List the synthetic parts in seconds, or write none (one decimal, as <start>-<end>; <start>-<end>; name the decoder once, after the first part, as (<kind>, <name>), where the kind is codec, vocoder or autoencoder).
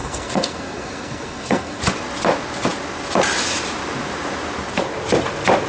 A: 0.0-1.8 (codec, SNAC)